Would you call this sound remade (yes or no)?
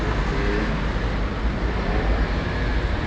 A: no